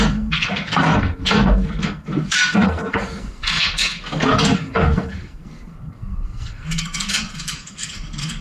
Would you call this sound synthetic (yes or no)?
yes